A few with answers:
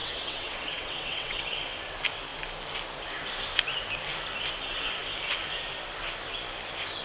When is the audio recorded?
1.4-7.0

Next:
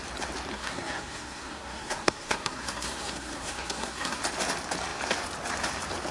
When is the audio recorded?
0.0-0.5; 4.2-6.1

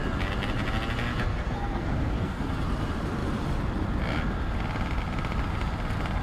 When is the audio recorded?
0.0-1.3; 2.5-6.2

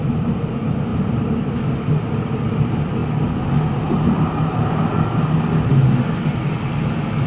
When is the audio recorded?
0.0-7.3

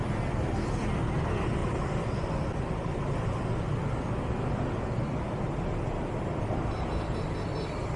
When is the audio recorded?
0.0-8.0

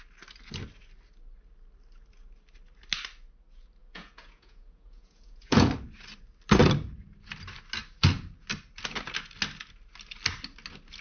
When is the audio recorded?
0.0-3.8; 5.7-11.0

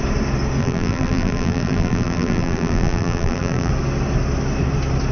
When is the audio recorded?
0.0-0.6; 3.7-5.1